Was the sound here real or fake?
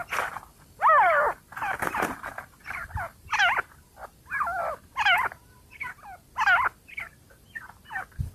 real